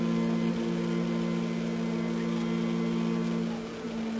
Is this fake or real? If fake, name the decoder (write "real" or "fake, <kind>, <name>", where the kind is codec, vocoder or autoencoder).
real